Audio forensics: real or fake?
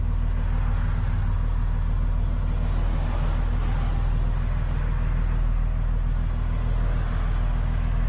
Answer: real